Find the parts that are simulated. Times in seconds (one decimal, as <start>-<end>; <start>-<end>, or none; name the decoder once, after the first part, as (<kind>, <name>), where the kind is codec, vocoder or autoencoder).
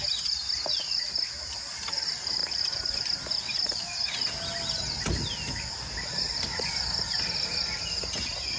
none